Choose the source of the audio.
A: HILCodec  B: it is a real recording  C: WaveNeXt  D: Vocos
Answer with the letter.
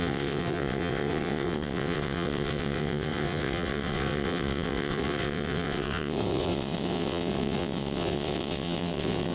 C